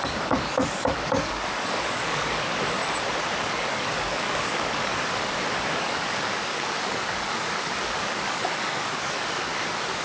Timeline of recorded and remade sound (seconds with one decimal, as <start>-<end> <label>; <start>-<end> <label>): 0.0-2.8 remade; 2.8-3.4 recorded; 3.4-10.0 remade

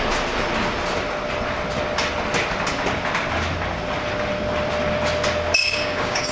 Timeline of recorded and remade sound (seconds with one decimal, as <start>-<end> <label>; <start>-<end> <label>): 0.0-5.6 recorded; 5.6-6.3 remade

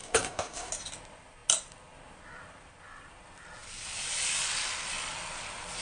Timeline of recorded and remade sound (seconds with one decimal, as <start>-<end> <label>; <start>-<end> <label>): 0.0-0.7 remade; 0.7-5.8 recorded

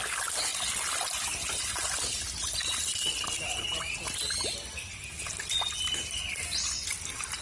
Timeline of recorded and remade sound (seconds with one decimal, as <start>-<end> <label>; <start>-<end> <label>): 0.0-7.4 recorded

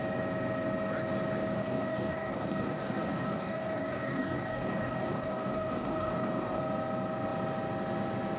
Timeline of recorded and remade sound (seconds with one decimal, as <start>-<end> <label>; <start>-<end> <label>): 0.0-1.6 recorded; 1.6-6.6 remade; 6.6-8.4 recorded

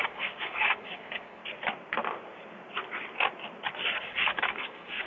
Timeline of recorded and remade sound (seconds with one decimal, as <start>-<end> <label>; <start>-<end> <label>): 0.0-1.4 remade; 1.4-4.0 recorded; 4.0-5.1 remade

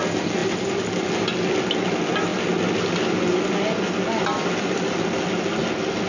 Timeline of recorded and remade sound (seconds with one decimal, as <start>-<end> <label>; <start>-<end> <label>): 0.0-6.1 recorded

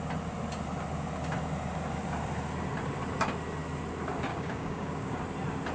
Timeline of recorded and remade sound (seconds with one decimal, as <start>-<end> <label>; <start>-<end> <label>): 0.0-4.3 recorded; 4.3-5.2 remade; 5.2-5.7 recorded